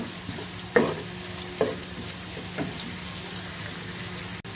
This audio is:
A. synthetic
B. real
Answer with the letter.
B